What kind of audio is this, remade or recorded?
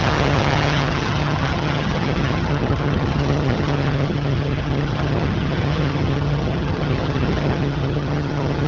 remade